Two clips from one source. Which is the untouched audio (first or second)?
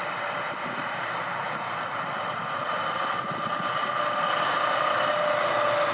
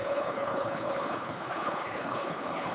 first